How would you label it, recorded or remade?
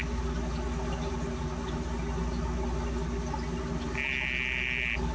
recorded